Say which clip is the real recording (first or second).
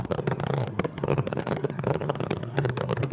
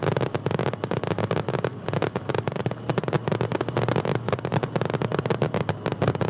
second